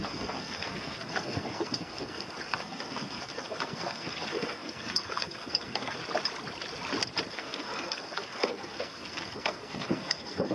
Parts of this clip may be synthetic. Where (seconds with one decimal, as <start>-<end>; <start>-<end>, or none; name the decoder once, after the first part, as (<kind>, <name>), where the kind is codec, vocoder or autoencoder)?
0.0-6.0 (codec, SNAC); 7.3-10.5